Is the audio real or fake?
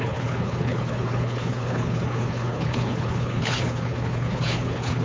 fake